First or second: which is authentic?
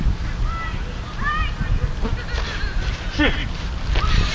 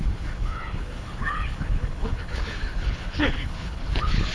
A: first